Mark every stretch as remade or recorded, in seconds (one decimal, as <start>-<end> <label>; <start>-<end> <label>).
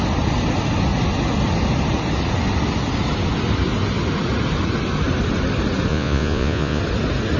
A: 0.0-5.9 recorded; 5.9-6.8 remade; 6.8-7.4 recorded